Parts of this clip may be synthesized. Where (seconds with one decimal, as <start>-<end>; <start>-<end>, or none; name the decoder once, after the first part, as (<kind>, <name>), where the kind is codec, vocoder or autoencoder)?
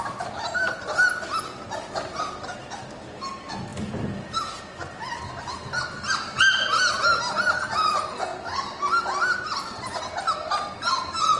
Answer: none